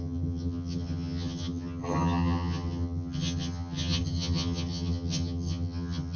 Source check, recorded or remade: remade